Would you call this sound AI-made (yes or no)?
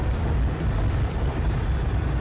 yes